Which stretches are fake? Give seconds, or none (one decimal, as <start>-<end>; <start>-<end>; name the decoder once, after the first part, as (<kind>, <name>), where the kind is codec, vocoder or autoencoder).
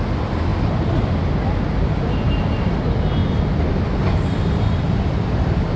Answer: none